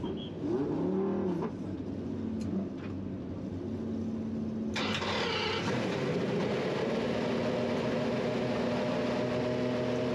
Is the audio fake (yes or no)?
no